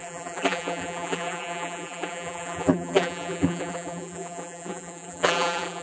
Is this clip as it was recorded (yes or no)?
no